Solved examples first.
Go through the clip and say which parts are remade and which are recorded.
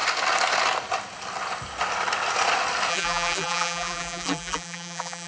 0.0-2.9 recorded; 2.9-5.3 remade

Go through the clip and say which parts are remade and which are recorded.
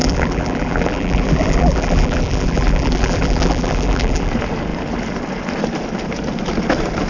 0.0-4.3 remade; 4.3-7.1 recorded